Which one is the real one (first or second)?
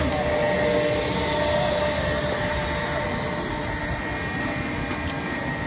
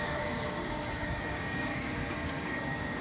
first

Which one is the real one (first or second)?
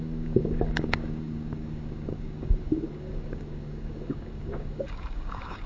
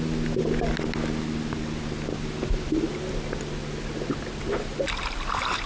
second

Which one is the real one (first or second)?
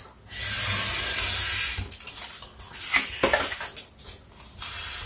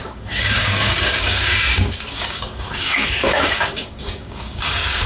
first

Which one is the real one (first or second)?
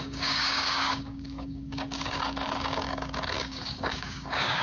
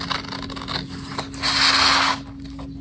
second